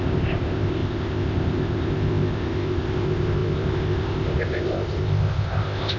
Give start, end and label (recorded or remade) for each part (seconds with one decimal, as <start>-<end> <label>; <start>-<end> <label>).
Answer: 0.0-6.0 remade